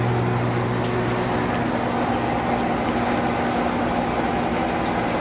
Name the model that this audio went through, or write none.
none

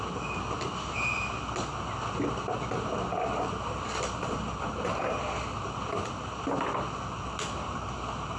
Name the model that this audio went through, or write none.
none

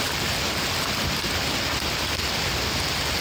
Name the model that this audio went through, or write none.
none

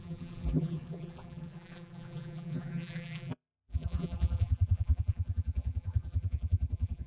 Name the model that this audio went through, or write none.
vocoder, BigVGAN v2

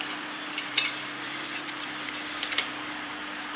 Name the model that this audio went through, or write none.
vocoder, BigVGAN v2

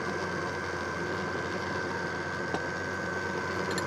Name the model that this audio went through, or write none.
none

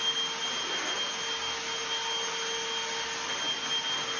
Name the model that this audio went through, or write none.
none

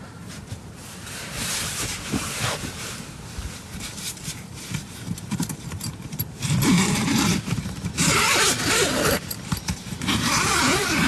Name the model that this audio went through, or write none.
vocoder, BigVGAN v2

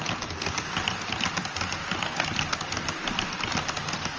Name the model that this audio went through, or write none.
none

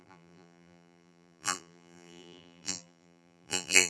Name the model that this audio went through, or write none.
vocoder, BigVGAN v2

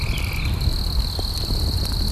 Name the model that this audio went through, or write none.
none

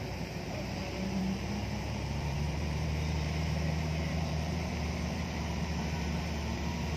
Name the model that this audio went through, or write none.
vocoder, BigVGAN v2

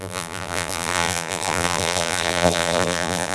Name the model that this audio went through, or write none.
vocoder, BigVGAN v2